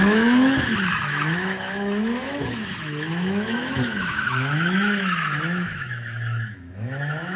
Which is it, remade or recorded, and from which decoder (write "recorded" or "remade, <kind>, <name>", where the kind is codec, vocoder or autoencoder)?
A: remade, autoencoder, DAC-VAE